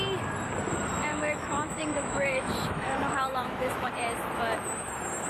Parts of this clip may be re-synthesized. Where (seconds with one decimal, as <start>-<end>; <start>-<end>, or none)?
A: 1.1-3.9